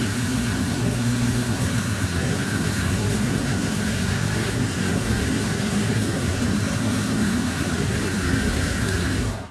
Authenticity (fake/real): fake